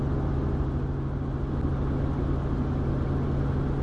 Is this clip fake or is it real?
real